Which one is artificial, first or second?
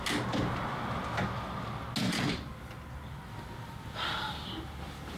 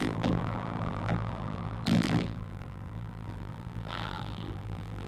second